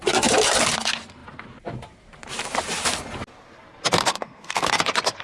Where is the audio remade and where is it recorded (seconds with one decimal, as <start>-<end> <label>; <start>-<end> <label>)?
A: 0.0-4.0 recorded; 4.0-4.7 remade; 4.7-5.2 recorded